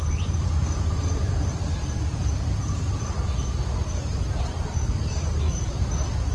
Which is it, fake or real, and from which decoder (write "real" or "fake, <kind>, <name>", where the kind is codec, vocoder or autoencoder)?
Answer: fake, vocoder, BigVGAN v2